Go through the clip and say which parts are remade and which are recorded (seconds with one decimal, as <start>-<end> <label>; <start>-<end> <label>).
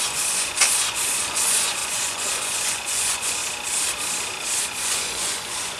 0.0-3.4 remade; 3.4-4.6 recorded; 4.6-5.8 remade